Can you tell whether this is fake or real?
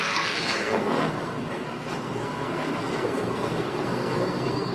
fake